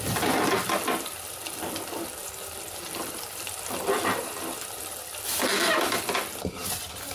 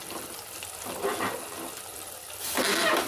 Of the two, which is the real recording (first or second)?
second